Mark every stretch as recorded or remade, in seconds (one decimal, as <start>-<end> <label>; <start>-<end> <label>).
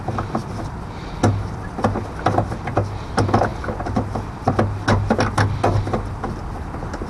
0.0-7.1 recorded